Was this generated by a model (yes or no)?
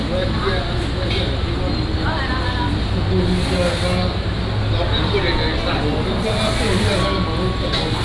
no